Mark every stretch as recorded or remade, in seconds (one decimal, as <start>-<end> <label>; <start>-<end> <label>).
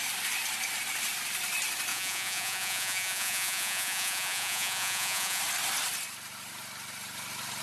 0.0-1.9 recorded; 1.9-5.4 remade; 5.4-7.6 recorded